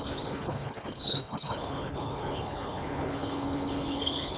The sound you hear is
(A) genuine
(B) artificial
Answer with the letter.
B